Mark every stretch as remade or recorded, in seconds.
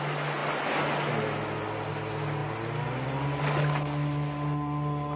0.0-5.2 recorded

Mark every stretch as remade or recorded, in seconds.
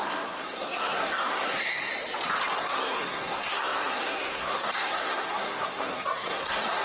0.0-1.9 remade; 1.9-2.6 recorded; 2.6-6.8 remade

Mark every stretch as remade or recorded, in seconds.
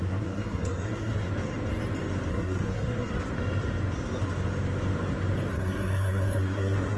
0.0-1.3 remade; 1.3-2.3 recorded; 2.3-3.1 remade; 3.1-5.5 recorded; 5.5-7.0 remade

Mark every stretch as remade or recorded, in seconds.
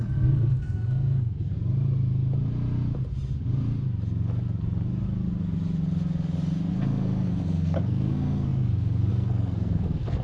0.0-1.5 remade; 1.5-6.7 recorded; 6.7-10.2 remade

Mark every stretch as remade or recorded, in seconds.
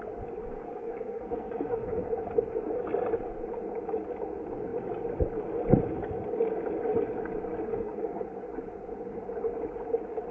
0.0-0.4 recorded; 0.4-2.1 remade; 2.1-7.7 recorded; 7.7-8.2 remade; 8.2-10.3 recorded